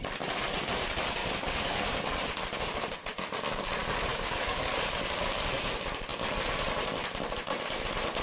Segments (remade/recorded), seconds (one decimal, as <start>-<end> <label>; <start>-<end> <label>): 0.0-1.2 recorded; 1.2-1.9 remade; 1.9-4.1 recorded; 4.1-4.7 remade; 4.7-8.2 recorded